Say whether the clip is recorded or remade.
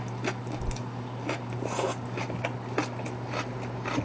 recorded